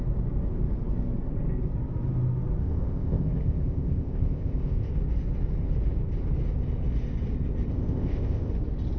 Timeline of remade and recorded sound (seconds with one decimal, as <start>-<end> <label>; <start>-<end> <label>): 0.0-2.6 recorded; 2.6-4.9 remade; 4.9-7.7 recorded; 7.7-8.5 remade; 8.5-9.0 recorded